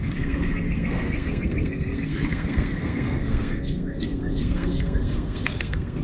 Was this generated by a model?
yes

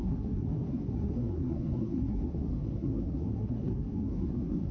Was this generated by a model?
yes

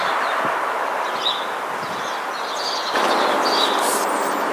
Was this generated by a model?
no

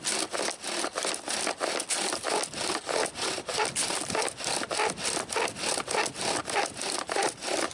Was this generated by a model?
no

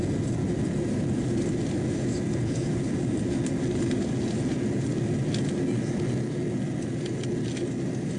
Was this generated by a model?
no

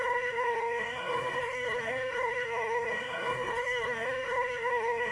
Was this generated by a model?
yes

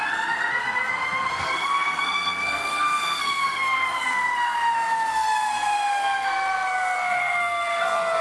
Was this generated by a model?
yes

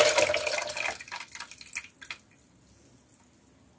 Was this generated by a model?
no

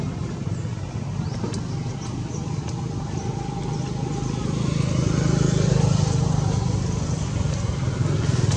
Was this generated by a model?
no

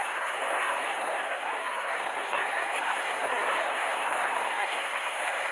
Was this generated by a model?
yes